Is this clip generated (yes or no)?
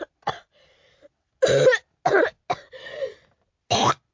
no